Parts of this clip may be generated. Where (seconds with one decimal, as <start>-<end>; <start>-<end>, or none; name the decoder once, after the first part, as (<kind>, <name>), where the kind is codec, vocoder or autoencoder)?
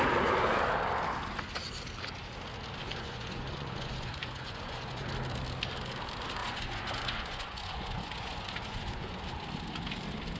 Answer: 2.8-5.1 (vocoder, Vocos); 6.4-9.2